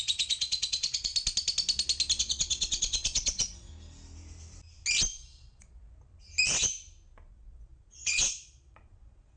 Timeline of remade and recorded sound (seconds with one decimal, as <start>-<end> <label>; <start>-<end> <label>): 0.0-1.1 remade; 1.1-2.2 recorded; 2.2-3.7 remade; 3.7-5.1 recorded; 5.1-5.8 remade; 5.8-7.3 recorded; 7.3-9.4 remade